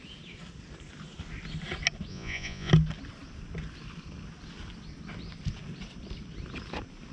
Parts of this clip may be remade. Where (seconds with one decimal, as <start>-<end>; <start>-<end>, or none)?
2.1-2.7